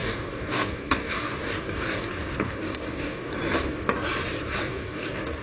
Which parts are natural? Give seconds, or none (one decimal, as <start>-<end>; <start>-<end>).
3.3-4.7